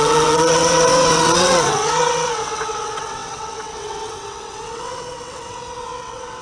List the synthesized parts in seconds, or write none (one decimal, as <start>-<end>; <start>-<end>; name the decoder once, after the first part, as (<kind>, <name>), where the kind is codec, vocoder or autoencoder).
0.0-6.4 (vocoder, WaveNeXt)